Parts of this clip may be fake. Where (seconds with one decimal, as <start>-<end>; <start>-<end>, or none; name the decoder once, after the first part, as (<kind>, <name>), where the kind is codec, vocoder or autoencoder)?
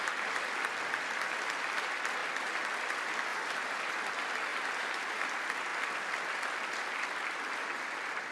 3.3-3.8 (vocoder, BigVGAN v2); 4.5-5.2